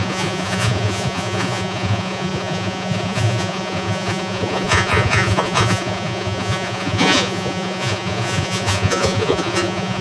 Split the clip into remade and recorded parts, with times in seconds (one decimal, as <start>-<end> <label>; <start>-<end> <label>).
0.0-10.0 remade